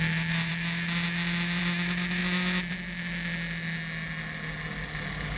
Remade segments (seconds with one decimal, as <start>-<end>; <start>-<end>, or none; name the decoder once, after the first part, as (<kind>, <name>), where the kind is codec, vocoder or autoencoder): none